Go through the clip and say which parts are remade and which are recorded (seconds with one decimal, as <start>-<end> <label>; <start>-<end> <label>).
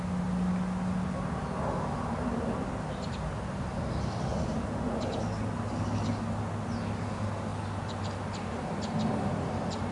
0.0-9.9 recorded